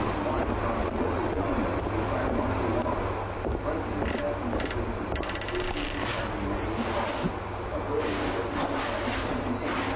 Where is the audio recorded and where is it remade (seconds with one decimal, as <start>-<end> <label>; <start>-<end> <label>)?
0.0-0.8 recorded; 0.8-1.8 remade; 1.8-10.0 recorded